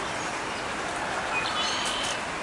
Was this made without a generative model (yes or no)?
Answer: yes